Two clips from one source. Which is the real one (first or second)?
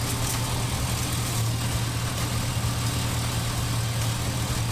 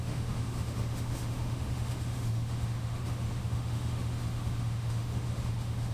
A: first